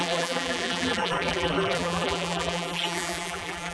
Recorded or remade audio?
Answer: remade